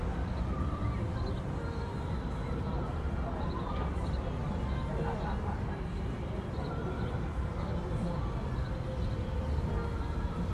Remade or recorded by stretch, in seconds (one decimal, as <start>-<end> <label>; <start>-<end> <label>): 0.0-10.5 recorded